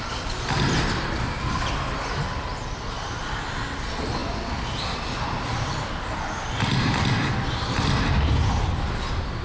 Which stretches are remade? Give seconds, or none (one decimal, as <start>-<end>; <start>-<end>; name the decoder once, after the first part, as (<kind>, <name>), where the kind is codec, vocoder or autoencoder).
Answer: none